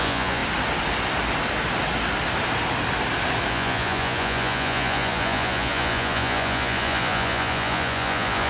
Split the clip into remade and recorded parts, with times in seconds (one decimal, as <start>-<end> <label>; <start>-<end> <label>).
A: 0.0-0.4 remade; 0.4-3.5 recorded; 3.5-8.5 remade